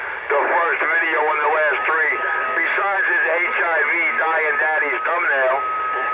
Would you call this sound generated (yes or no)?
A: no